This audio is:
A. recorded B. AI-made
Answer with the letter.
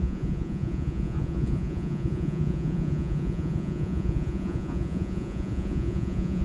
B